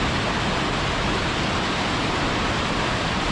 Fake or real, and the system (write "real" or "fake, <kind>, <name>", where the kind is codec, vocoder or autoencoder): real